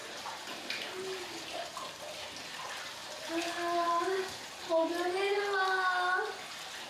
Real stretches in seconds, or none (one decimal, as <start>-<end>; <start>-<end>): 1.0-3.0; 4.7-6.9